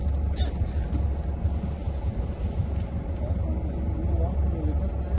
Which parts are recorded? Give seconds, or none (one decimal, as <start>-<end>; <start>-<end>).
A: 0.0-5.2